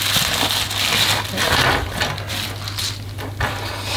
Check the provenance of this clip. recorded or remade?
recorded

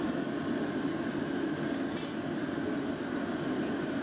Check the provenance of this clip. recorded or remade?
recorded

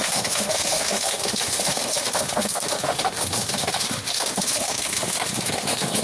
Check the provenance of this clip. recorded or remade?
remade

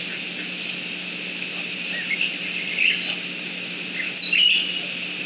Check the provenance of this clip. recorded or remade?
recorded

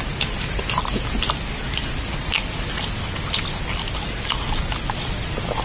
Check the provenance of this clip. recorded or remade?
recorded